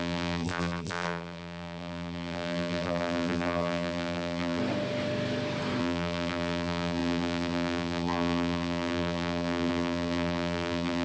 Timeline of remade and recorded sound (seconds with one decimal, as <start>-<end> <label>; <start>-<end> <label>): 0.0-4.6 remade; 4.6-5.8 recorded; 5.8-11.0 remade